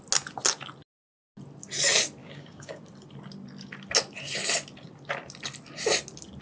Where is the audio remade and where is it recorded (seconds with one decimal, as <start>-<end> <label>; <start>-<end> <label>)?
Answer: 0.0-2.2 recorded; 2.2-2.8 remade; 2.8-6.4 recorded